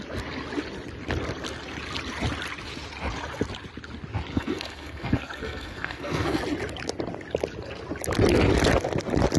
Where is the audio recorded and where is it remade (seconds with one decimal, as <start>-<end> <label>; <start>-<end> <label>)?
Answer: 0.0-4.3 recorded; 4.3-6.4 remade; 6.4-9.4 recorded